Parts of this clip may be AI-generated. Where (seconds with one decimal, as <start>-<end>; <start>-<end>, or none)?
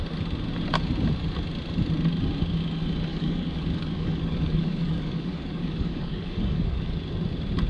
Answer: 3.1-7.0